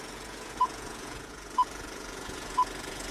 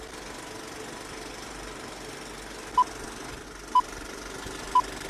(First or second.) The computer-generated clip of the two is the first